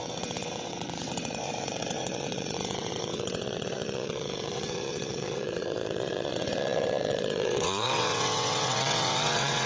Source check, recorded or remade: remade